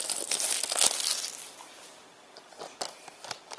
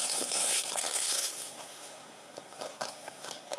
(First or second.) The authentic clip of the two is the first